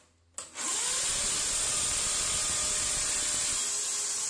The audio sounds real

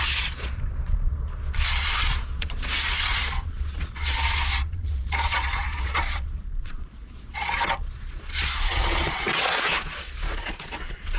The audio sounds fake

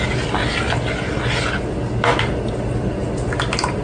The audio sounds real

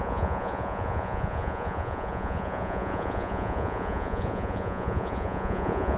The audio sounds fake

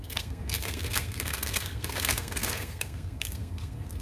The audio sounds fake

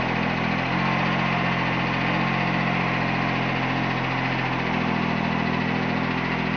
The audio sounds real